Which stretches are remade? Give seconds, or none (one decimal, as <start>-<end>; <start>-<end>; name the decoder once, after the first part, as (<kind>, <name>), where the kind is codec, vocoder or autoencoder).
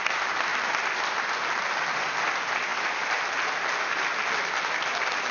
0.5-1.3 (vocoder, BigVGAN v2)